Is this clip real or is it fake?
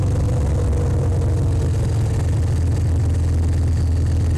real